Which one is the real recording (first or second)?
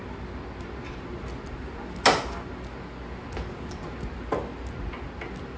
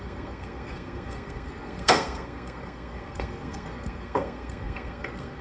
first